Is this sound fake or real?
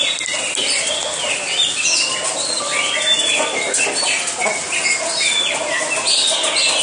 real